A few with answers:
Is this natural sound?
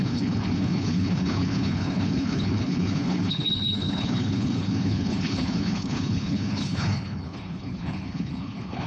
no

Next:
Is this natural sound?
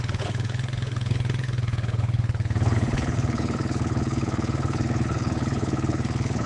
no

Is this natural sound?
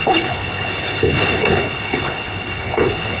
no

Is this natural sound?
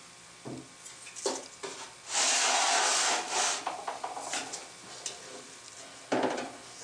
yes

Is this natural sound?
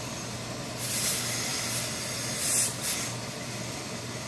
yes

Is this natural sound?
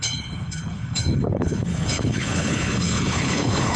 no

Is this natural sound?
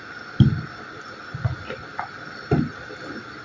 yes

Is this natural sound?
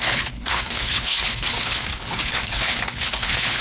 no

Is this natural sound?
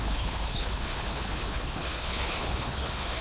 no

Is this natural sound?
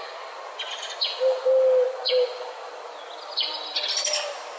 yes